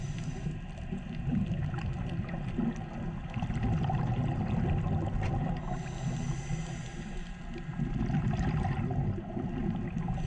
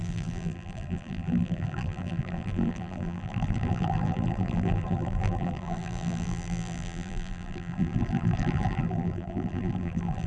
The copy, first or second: second